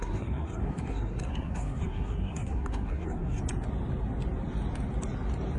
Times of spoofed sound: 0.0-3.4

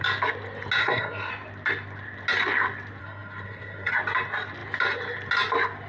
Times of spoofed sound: 0.8-1.3; 3.0-3.9

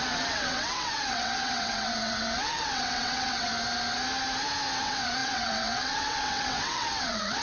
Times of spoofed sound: 0.0-3.5; 4.8-7.4